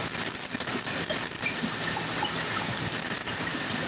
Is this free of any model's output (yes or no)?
yes